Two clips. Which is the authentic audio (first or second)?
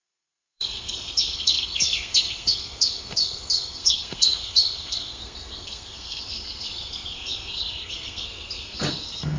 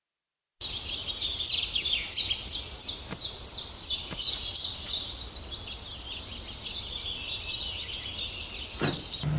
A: second